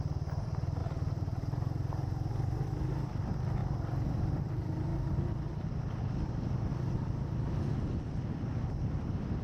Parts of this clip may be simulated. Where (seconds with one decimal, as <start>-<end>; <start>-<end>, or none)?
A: 0.0-3.6; 4.3-4.9; 5.5-6.7; 8.7-9.4